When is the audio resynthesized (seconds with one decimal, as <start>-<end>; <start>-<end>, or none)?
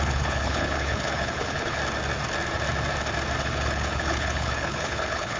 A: 0.0-1.8; 3.4-5.4